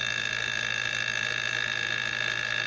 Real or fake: real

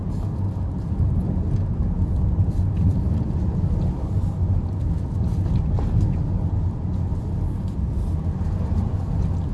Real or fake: real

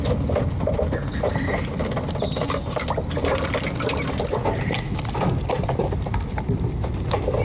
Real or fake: real